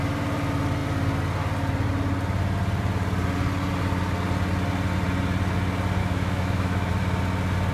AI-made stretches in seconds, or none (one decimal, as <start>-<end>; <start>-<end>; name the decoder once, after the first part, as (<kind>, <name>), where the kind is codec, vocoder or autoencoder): 6.0-6.9 (autoencoder, DAC-VAE)

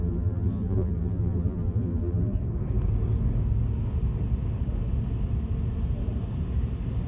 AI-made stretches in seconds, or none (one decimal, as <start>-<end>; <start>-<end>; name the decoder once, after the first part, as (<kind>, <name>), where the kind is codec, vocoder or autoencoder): 0.0-2.4 (vocoder, BigVGAN v2)